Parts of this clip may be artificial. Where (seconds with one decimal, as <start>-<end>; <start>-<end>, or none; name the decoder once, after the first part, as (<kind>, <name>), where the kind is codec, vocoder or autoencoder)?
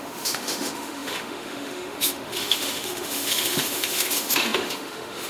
0.0-5.3 (autoencoder, DAC-VAE)